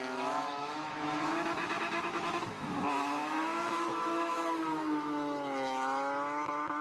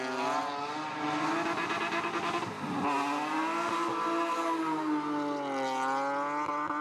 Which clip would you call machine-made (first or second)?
first